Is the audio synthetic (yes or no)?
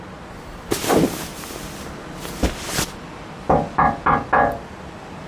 no